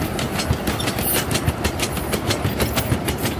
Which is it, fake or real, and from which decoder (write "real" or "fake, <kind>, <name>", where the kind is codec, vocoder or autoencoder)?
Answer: real